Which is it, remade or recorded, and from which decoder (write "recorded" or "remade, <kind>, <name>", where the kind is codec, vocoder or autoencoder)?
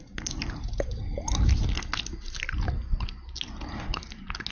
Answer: recorded